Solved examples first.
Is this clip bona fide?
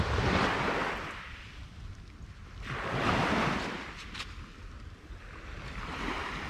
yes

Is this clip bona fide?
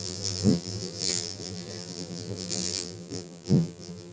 no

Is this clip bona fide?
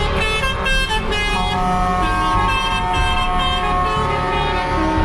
yes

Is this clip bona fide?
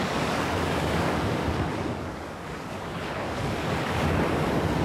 no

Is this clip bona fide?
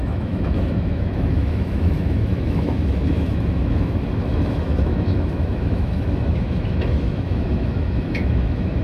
no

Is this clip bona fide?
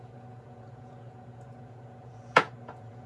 no